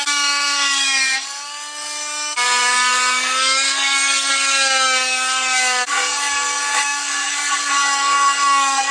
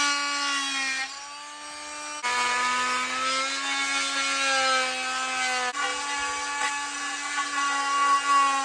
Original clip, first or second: second